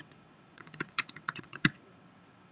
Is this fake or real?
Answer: fake